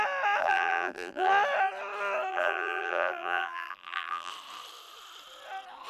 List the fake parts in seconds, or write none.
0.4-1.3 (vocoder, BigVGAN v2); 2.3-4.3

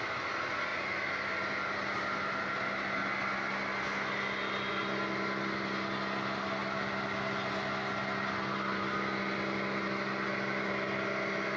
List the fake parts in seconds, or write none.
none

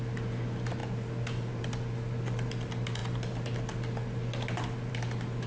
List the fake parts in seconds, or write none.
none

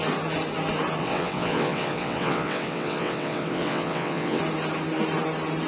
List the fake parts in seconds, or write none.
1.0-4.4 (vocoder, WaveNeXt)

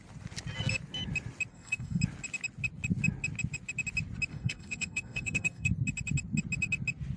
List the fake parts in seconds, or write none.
1.5-2.0 (codec, SNAC); 4.3-5.7